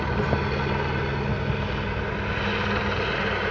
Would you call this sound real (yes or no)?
yes